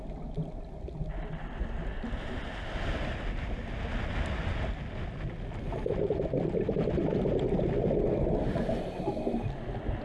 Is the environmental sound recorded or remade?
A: recorded